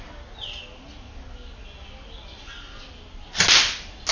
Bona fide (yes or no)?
yes